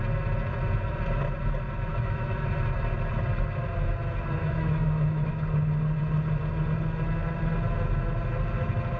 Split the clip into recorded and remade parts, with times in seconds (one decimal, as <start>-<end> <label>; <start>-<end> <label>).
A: 0.0-1.9 recorded; 1.9-2.5 remade; 2.5-4.4 recorded; 4.4-5.3 remade; 5.3-9.0 recorded